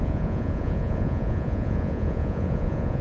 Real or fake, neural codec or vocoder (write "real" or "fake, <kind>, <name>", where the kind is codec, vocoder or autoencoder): fake, vocoder, Vocos